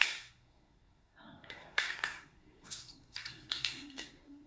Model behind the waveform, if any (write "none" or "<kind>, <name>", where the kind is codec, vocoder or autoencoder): codec, SNAC